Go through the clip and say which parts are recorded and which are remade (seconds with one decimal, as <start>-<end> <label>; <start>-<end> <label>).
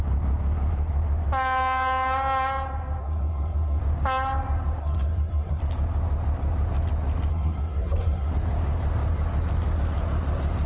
0.0-3.0 recorded; 3.0-3.8 remade; 3.8-4.8 recorded; 4.8-5.6 remade; 5.6-7.3 recorded; 7.3-8.3 remade; 8.3-10.7 recorded